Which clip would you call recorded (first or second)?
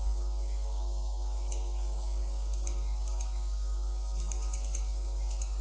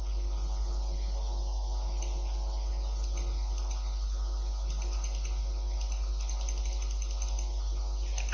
second